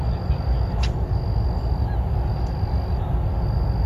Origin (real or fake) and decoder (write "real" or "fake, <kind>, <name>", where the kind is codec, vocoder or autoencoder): real